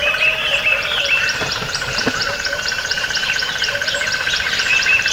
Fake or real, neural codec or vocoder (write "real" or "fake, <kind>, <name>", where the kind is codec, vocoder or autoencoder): fake, vocoder, BigVGAN v2